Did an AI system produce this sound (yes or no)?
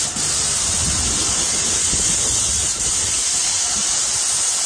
no